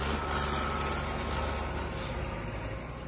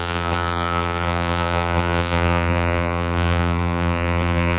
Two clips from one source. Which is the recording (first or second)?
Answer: first